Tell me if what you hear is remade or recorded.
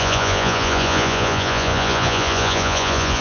remade